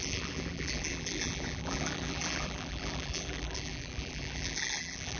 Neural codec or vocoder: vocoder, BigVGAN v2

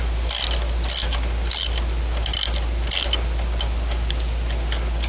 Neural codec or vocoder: none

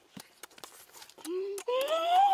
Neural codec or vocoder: none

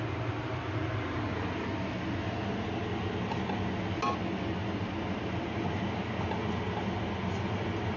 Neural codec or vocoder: none